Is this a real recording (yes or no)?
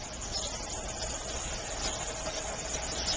yes